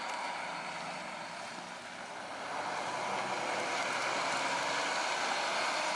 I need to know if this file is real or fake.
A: real